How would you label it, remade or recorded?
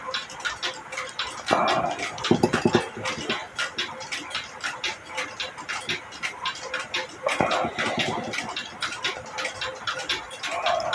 recorded